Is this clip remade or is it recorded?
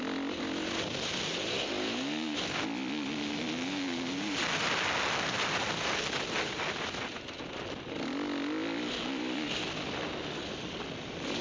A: recorded